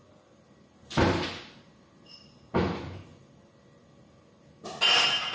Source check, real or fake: real